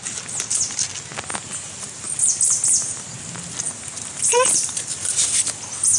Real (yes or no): yes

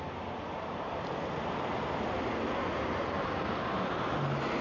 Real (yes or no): yes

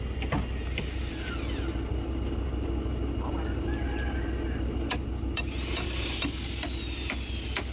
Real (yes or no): yes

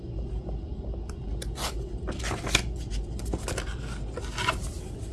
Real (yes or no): yes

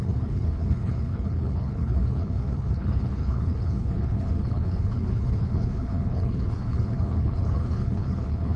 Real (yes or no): no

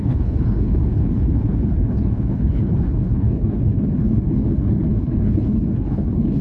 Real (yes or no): no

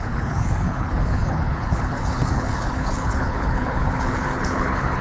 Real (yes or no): no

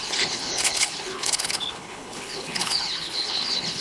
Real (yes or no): no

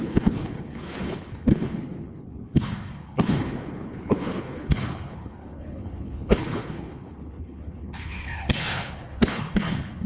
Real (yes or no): no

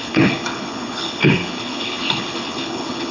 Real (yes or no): no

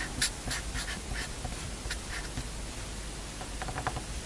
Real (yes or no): yes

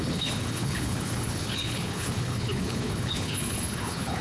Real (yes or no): no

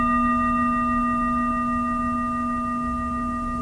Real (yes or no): yes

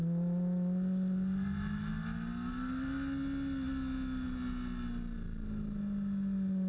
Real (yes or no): yes